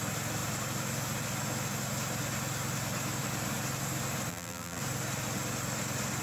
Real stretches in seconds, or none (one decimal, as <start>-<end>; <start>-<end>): 0.0-4.3; 4.8-6.2